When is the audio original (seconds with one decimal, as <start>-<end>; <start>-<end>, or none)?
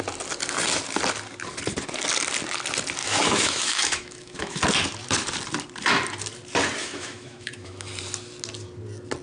0.0-3.0; 4.6-6.8; 7.9-9.2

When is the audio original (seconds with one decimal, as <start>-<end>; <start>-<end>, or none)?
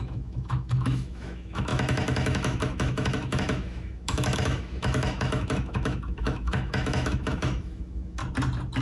8.2-8.8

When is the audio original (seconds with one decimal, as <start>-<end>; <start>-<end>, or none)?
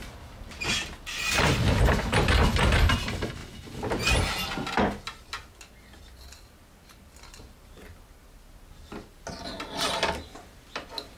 0.0-11.2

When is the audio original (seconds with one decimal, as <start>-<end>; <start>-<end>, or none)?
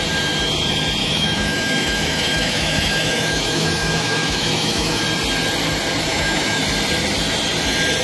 0.0-1.0; 5.0-6.1; 6.6-8.0